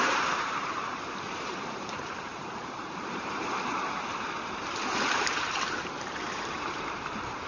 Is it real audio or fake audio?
fake